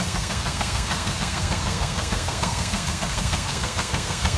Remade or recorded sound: remade